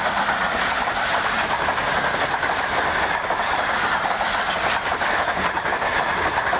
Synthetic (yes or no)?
no